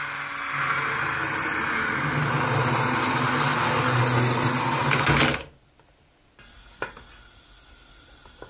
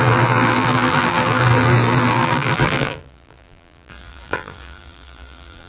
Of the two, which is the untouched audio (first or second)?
first